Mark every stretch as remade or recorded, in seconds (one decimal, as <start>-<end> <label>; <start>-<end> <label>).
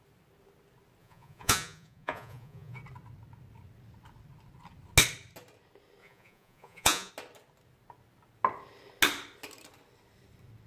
0.0-1.0 recorded; 1.0-2.8 remade; 2.8-6.0 recorded; 6.0-7.1 remade; 7.1-10.7 recorded